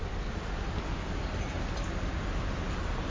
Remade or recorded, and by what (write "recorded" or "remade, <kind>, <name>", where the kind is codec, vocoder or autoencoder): recorded